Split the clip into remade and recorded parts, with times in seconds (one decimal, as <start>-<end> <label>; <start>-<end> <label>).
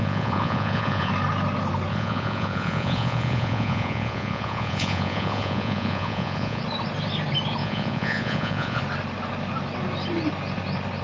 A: 0.0-1.1 remade; 1.1-1.9 recorded; 1.9-6.6 remade; 6.6-7.6 recorded; 7.6-8.8 remade; 8.8-11.0 recorded